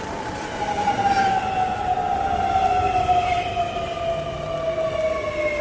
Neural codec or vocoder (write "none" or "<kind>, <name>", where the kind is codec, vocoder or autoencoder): none